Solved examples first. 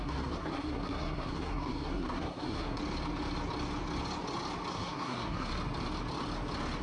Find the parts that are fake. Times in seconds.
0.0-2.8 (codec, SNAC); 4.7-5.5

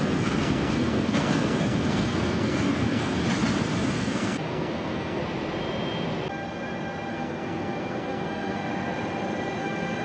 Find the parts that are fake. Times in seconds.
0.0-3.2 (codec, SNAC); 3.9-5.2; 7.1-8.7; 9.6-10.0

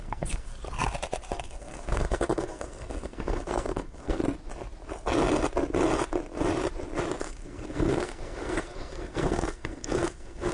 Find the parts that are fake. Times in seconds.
0.0-0.5 (codec, SNAC); 1.4-4.2; 7.2-10.5